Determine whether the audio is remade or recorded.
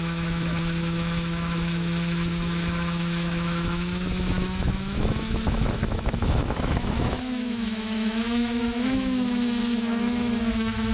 remade